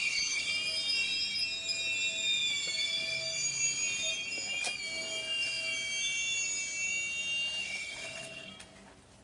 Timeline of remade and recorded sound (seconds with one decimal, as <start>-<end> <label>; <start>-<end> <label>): 0.0-0.5 remade; 0.5-7.6 recorded; 7.6-8.5 remade; 8.5-9.2 recorded